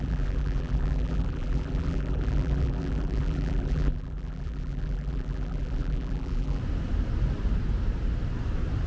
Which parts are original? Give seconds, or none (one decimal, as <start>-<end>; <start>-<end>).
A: 6.6-8.9